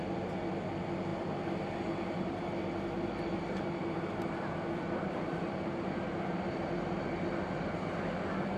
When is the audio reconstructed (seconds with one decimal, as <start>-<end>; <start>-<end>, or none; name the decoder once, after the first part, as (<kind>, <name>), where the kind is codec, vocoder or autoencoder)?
none